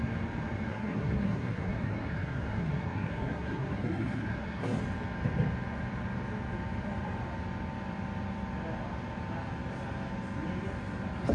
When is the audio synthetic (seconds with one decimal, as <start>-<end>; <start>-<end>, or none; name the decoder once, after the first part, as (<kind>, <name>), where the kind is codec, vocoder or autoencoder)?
0.7-4.8 (codec, SNAC)